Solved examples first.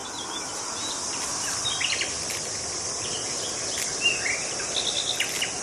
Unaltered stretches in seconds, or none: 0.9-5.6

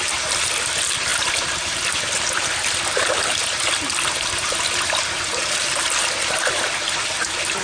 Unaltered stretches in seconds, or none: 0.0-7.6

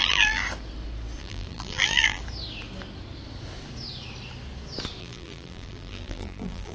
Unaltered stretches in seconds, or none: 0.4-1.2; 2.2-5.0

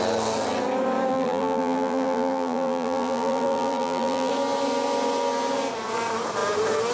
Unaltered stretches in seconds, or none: 0.0-1.1; 4.3-6.9

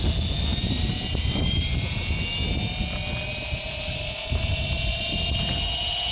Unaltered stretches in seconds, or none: 0.0-0.5; 1.9-3.3; 4.0-6.1

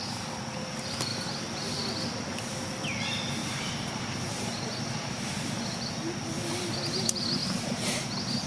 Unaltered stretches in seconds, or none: 0.0-1.1; 1.7-3.4; 5.3-8.5